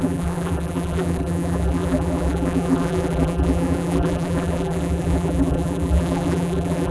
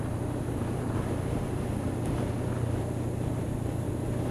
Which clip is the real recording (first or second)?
second